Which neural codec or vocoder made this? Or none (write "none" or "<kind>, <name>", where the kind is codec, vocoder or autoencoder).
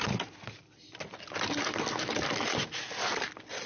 none